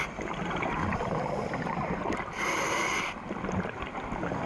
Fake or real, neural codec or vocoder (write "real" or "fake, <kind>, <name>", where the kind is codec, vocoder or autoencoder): real